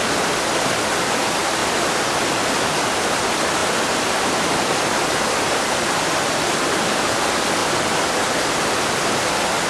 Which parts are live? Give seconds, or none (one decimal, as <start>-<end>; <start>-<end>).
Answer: 0.0-3.6; 5.3-7.6; 8.3-9.7